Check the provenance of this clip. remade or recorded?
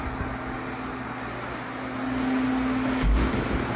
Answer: recorded